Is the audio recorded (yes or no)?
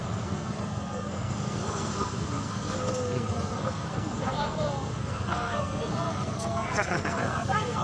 no